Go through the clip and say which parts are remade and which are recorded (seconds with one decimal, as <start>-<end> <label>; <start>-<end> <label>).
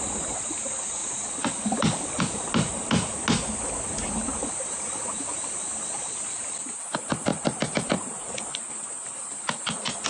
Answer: 0.0-1.0 recorded; 1.0-2.2 remade; 2.2-7.3 recorded; 7.3-8.4 remade; 8.4-10.1 recorded